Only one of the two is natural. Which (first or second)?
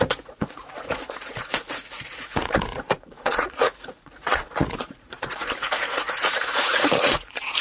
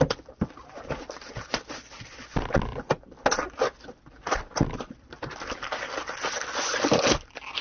second